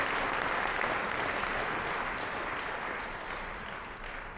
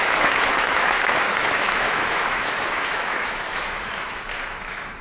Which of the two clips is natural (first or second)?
first